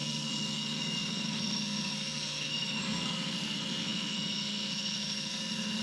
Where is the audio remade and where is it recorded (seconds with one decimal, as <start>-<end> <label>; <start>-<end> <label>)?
0.0-5.8 remade